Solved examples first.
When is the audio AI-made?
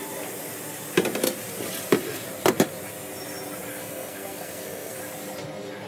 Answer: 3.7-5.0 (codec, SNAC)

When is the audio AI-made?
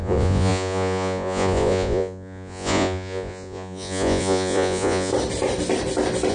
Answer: 0.0-5.1 (vocoder, Vocos)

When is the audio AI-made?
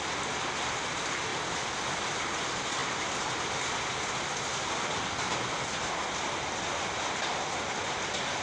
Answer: none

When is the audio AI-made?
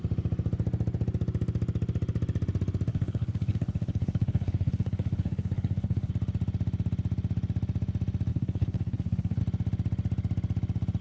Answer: 2.9-6.1 (codec, HILCodec); 8.3-9.4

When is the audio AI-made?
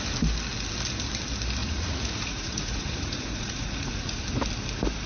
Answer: 1.6-4.2 (vocoder, Vocos)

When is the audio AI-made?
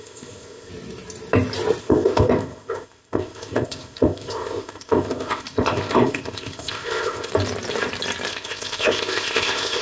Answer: 0.0-0.7 (codec, ZipCodec); 1.8-7.3; 8.3-9.8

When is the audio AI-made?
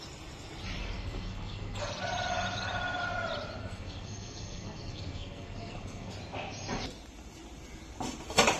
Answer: 0.8-1.8 (codec, SNAC); 3.6-6.1